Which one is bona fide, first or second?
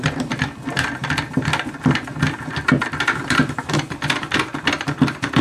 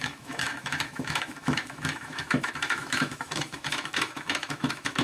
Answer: first